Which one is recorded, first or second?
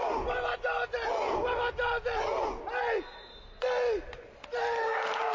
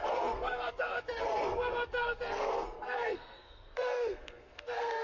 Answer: first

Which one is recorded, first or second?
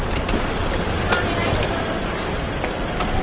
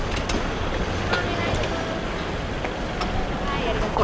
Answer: second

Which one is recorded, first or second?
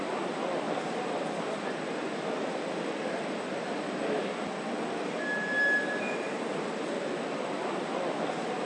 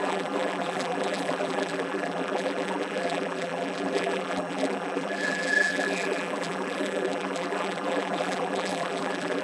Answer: first